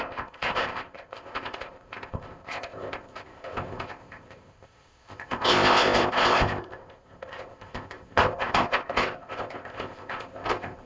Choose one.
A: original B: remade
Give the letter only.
B